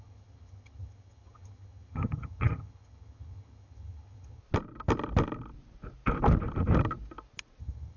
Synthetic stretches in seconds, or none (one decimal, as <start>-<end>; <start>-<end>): 0.0-4.4; 7.6-8.0